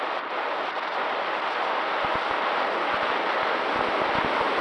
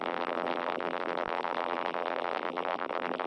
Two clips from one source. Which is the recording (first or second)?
first